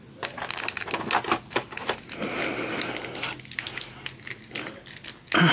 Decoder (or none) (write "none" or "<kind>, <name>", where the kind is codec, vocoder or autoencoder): none